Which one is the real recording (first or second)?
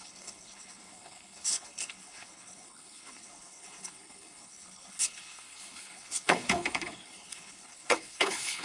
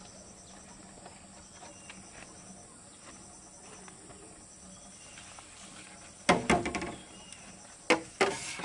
second